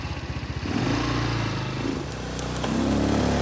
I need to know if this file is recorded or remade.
recorded